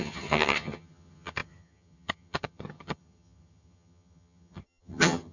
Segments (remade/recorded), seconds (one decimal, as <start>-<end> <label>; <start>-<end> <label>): 0.0-5.3 remade